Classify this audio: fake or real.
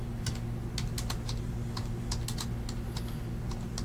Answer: real